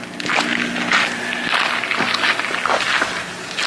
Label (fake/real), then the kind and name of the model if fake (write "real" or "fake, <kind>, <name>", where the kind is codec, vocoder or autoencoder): real